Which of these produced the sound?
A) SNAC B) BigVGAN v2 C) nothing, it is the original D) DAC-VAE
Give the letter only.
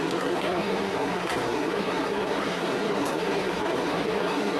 A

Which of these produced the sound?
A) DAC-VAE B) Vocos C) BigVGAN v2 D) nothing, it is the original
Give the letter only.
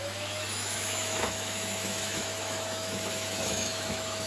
A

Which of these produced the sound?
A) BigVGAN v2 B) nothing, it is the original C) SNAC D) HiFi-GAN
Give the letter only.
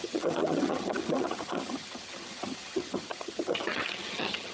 D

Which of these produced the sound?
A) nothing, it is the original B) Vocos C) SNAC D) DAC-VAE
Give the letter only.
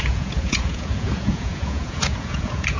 B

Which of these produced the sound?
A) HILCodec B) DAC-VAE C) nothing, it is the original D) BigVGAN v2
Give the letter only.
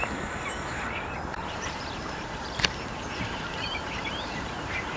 D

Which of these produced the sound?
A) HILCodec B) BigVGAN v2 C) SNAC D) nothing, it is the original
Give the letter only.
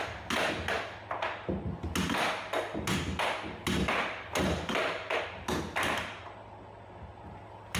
D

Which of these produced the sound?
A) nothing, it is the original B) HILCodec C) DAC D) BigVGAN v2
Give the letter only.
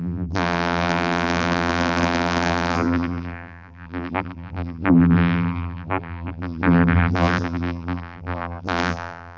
D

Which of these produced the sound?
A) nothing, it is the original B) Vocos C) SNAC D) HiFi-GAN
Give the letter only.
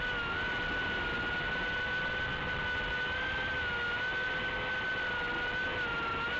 A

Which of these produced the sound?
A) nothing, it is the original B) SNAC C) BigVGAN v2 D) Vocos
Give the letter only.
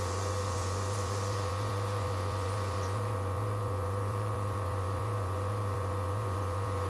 D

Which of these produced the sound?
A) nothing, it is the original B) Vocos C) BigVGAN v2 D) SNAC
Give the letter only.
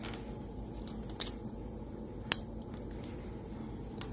A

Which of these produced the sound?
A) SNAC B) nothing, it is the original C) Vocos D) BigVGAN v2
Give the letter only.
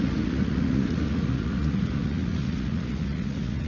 C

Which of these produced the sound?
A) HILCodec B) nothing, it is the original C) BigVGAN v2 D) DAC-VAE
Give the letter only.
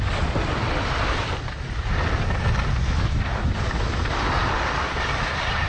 C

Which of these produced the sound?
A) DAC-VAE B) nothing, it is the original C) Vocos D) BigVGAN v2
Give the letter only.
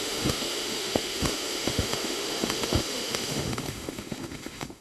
A